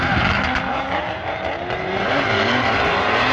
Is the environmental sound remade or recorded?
recorded